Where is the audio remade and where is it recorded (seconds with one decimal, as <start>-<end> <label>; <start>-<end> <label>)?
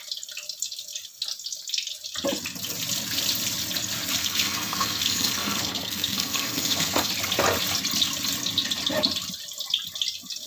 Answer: 0.0-4.2 recorded; 4.2-7.1 remade; 7.1-10.5 recorded